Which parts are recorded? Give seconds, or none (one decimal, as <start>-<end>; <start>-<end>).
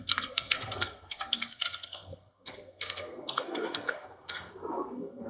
none